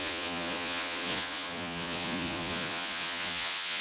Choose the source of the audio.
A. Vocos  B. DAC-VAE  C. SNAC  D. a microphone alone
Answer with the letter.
A